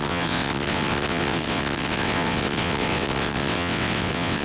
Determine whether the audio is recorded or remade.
remade